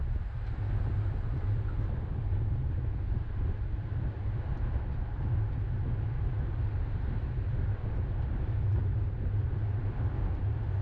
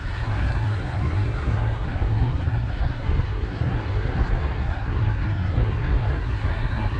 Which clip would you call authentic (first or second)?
first